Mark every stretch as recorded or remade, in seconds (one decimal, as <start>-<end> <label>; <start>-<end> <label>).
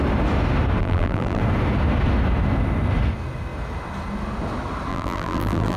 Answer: 0.0-0.8 recorded; 0.8-1.4 remade; 1.4-4.9 recorded; 4.9-5.8 remade